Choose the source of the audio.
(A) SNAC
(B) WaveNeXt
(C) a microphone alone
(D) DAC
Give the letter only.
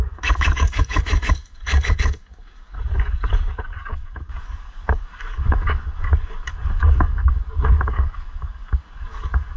D